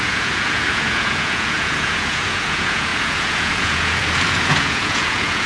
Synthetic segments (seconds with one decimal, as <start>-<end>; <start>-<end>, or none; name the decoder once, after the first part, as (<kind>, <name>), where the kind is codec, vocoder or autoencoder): 0.0-5.5 (vocoder, Vocos)